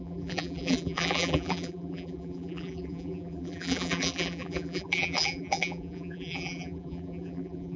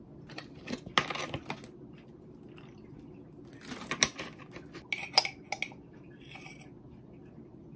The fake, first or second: first